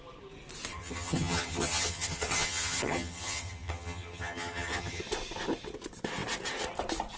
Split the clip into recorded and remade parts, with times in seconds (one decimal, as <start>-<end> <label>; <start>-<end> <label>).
0.0-0.7 recorded; 0.7-5.0 remade; 5.0-7.2 recorded